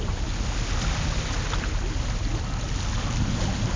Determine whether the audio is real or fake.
real